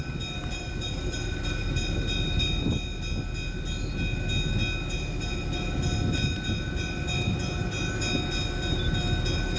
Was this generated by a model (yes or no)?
no